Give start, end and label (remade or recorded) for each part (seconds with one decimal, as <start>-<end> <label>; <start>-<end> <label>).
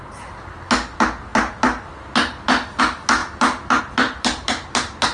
0.0-5.1 recorded